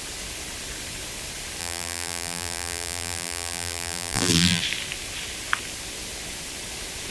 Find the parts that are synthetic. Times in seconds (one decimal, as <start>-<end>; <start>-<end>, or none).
1.6-4.6